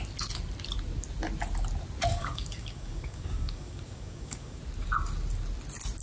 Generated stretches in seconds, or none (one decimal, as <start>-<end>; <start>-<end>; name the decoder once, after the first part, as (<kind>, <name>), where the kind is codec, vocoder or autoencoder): 2.1-4.6 (codec, DAC)